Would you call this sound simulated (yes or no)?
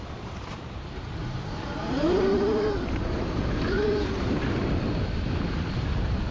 yes